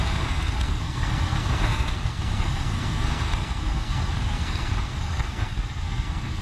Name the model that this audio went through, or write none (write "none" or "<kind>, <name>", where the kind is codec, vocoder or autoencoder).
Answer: codec, SNAC